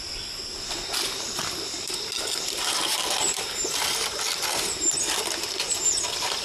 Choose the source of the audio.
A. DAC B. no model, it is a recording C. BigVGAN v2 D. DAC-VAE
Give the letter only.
B